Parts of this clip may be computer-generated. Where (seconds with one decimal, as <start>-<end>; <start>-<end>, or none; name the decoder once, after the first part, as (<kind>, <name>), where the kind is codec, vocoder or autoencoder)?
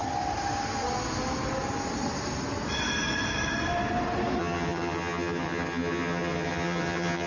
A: 4.4-7.3 (vocoder, HiFi-GAN)